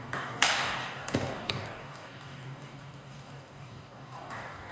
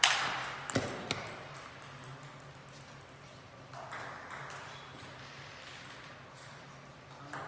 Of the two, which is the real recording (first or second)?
second